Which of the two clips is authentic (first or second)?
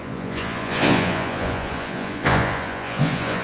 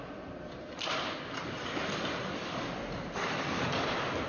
second